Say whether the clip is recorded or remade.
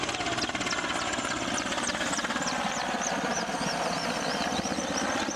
recorded